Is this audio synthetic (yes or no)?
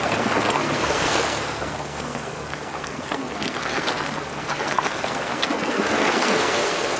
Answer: yes